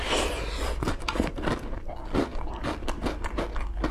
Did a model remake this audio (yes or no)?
no